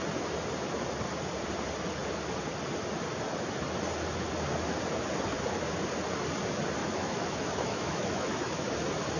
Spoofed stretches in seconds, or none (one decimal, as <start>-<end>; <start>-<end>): 6.8-8.7